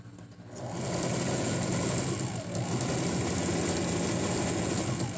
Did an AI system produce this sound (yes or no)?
no